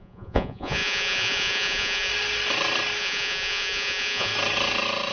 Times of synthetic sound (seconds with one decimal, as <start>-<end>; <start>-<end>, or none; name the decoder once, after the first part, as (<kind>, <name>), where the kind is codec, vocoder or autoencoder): 0.0-2.1 (vocoder, Vocos); 3.0-4.3